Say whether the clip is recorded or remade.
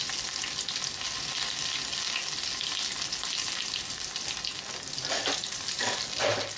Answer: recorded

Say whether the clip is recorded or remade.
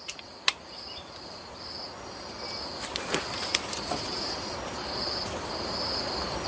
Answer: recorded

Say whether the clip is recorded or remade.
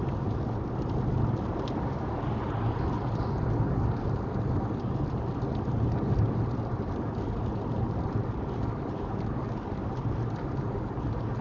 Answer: recorded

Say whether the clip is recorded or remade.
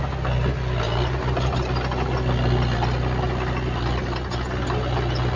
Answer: recorded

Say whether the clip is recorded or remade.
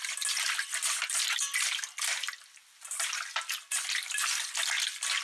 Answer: recorded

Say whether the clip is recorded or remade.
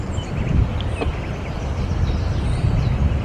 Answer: recorded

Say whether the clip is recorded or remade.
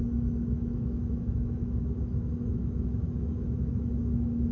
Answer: remade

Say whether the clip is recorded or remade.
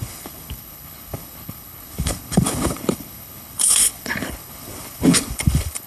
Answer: remade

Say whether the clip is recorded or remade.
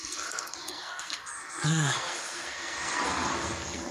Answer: remade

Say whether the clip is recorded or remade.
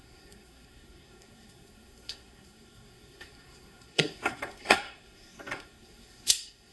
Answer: remade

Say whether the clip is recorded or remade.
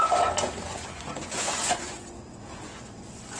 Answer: remade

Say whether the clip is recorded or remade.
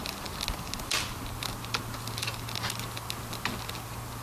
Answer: recorded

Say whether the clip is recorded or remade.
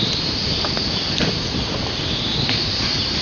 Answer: recorded